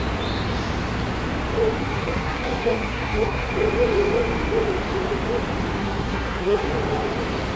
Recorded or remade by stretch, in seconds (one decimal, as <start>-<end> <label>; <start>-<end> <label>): 0.0-1.8 recorded; 1.8-3.5 remade; 3.5-5.8 recorded; 5.8-6.7 remade; 6.7-7.6 recorded